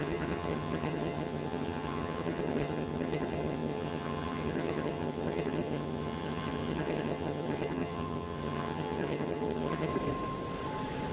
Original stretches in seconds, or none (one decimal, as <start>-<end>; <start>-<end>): 9.9-11.1